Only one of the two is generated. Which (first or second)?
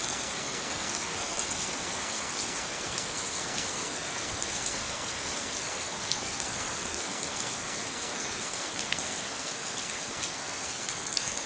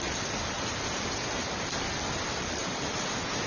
first